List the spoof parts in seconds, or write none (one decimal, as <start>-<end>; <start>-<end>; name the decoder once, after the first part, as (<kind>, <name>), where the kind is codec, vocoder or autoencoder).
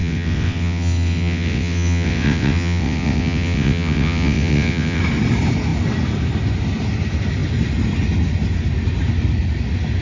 0.0-5.0 (vocoder, WaveNeXt)